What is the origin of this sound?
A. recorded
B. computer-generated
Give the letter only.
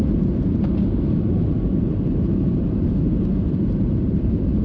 B